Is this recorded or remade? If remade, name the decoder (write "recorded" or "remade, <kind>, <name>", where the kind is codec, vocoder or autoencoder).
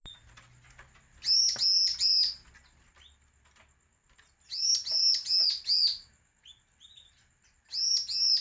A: recorded